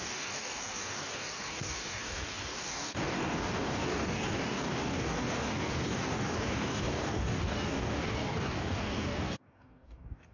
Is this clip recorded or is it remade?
remade